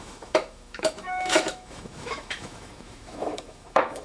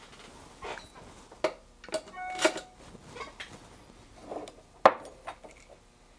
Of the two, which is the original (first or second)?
second